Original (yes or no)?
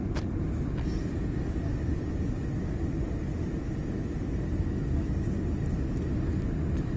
yes